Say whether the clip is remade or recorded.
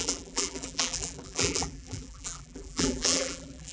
remade